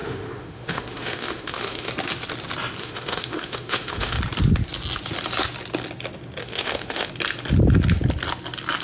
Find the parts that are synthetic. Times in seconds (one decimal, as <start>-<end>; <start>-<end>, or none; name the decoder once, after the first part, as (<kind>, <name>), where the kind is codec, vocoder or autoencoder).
0.0-1.9 (autoencoder, DAC-VAE); 2.8-4.2; 6.4-7.1